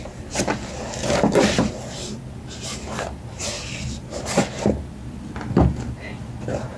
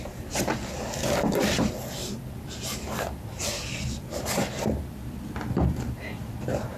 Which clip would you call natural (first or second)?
first